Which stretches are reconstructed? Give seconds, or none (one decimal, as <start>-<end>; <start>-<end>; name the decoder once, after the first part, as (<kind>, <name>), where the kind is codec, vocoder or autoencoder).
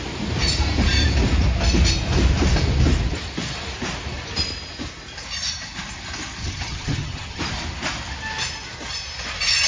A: 6.4-7.4 (vocoder, HiFi-GAN)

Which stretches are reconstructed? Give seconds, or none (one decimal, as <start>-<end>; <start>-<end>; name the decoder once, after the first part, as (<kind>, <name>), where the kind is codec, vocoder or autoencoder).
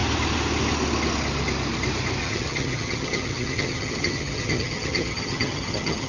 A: 2.2-6.1 (vocoder, HiFi-GAN)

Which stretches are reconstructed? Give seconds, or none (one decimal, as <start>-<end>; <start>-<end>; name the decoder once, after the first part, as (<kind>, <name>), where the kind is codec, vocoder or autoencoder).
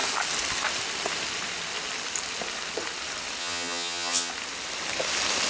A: 3.4-4.3 (vocoder, HiFi-GAN)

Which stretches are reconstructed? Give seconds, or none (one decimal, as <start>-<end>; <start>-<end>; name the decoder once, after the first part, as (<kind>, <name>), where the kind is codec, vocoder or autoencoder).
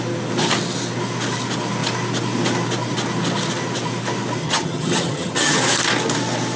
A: 4.4-5.6 (vocoder, HiFi-GAN)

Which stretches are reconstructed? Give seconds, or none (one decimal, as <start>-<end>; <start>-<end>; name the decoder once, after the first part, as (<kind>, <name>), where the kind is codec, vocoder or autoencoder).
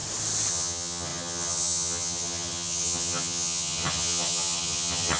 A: 0.5-5.2 (vocoder, HiFi-GAN)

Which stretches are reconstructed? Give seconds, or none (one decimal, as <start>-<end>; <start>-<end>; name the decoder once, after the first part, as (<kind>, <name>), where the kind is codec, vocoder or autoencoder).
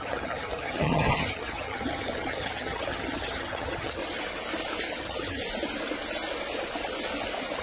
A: 0.0-4.0 (vocoder, HiFi-GAN); 5.0-5.4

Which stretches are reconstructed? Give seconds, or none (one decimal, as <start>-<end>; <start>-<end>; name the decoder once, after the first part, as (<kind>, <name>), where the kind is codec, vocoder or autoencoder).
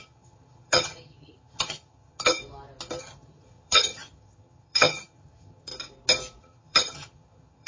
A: 0.0-2.4 (vocoder, HiFi-GAN); 3.0-5.7; 6.4-7.7